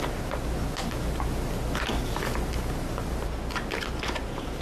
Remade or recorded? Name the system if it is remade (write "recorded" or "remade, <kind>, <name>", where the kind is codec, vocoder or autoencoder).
recorded